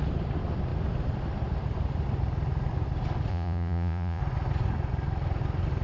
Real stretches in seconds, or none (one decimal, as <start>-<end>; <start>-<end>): 0.0-3.3; 4.2-5.8